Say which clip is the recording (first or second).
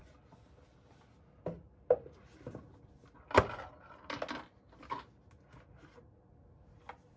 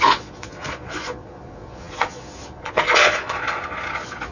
first